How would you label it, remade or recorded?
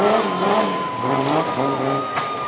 recorded